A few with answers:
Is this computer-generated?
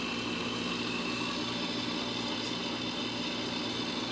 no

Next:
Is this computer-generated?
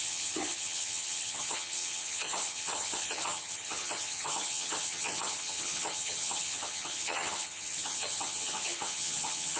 yes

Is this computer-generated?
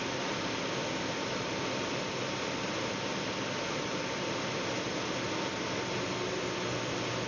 no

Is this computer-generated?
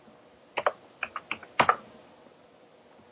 no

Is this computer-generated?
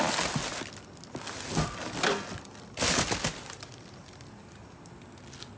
no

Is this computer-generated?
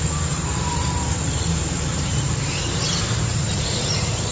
yes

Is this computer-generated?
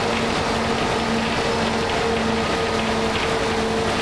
no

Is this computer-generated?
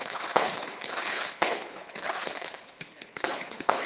yes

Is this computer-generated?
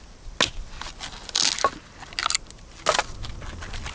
no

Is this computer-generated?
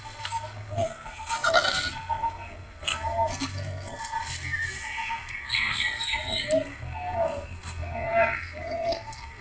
yes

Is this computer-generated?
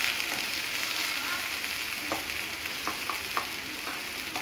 no